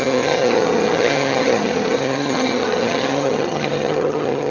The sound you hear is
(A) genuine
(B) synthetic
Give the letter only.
B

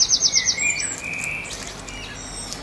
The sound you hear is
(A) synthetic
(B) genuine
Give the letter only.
B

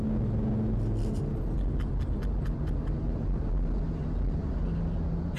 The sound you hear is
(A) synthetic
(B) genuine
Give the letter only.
B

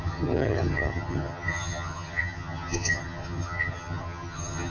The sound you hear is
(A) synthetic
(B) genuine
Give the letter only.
A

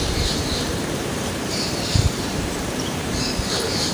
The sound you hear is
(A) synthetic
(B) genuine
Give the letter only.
A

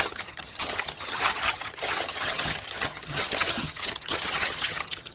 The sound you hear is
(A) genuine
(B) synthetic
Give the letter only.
B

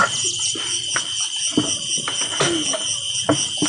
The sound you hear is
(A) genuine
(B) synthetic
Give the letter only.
A